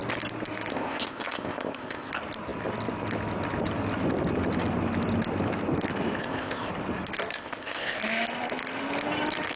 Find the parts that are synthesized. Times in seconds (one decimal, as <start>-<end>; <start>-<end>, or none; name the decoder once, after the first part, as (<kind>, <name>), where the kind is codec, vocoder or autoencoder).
0.7-2.1 (codec, ZipCodec); 6.2-6.7; 7.3-8.0